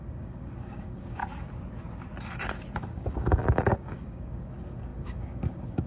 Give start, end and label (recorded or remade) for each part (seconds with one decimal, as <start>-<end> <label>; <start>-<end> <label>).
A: 0.0-1.2 remade; 1.2-2.8 recorded; 2.8-5.9 remade